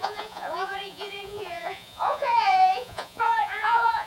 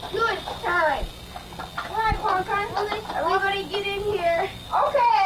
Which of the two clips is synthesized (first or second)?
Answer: first